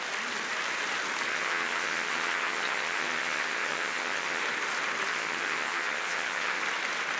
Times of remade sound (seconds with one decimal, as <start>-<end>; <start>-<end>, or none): 1.3-4.4; 5.1-6.6